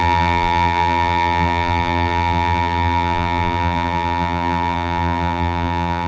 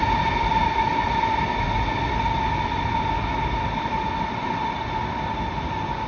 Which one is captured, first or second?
second